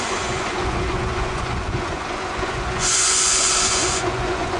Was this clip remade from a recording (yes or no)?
yes